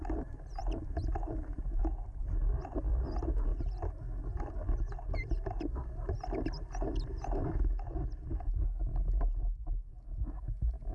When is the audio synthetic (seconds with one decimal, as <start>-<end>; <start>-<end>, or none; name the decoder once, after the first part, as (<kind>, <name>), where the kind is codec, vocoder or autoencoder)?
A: none